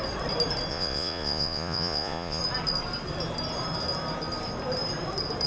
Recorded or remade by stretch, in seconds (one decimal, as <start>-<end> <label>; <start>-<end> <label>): 0.0-0.7 recorded; 0.7-2.4 remade; 2.4-5.5 recorded